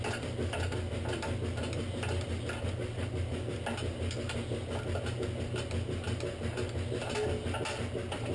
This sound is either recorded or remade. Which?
recorded